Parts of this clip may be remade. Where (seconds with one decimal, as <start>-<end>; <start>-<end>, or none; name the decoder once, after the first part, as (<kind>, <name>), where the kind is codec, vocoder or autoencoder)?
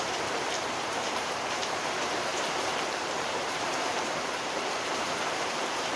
0.0-6.0 (vocoder, BigVGAN v2)